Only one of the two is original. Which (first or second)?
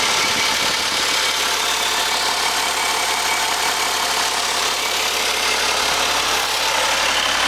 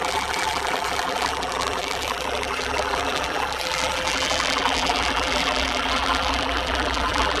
first